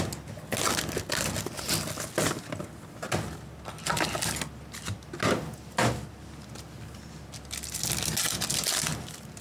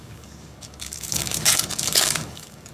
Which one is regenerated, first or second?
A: second